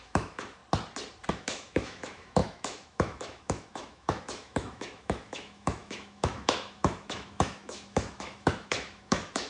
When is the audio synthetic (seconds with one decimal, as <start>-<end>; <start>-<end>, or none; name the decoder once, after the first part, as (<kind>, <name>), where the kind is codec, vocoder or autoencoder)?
0.0-0.6 (autoencoder, DAC-VAE); 1.3-9.5